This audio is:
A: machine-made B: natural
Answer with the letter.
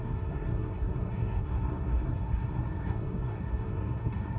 A